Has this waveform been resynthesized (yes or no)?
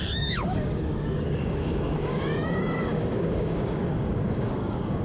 yes